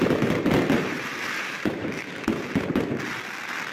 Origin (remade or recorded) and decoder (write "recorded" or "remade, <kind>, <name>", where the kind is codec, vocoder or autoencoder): recorded